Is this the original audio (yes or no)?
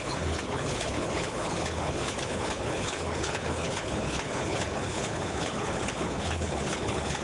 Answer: no